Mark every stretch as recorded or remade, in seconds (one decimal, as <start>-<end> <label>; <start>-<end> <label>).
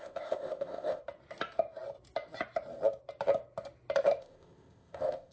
0.0-1.0 remade; 1.0-4.2 recorded; 4.2-5.3 remade